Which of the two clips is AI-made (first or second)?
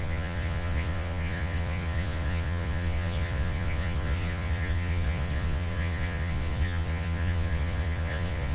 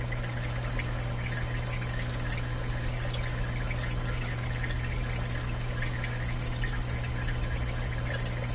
first